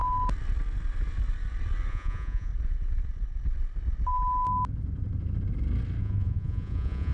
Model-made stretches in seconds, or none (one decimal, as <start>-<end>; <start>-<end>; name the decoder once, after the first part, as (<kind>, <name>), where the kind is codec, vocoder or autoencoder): 1.9-2.5 (vocoder, Vocos); 6.0-7.1